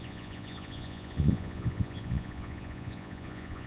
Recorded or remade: remade